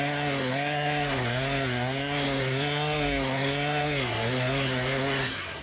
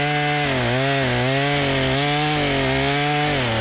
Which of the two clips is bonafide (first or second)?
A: second